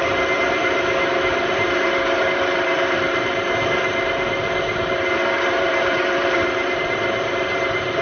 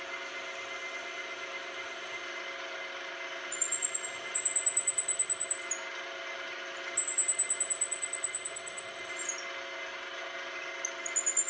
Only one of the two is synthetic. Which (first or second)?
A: first